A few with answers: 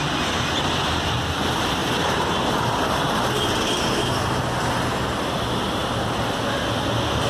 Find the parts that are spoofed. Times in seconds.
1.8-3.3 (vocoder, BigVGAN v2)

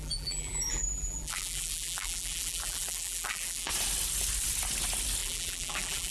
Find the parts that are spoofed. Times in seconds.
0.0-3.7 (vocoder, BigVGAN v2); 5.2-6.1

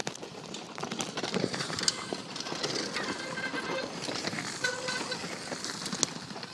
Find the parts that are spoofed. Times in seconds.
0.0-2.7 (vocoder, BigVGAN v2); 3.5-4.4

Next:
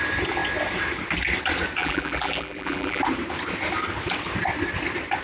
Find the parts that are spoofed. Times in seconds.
1.8-3.0 (vocoder, BigVGAN v2)

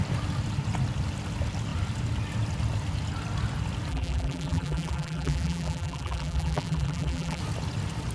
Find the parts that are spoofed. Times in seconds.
3.9-7.4 (vocoder, BigVGAN v2)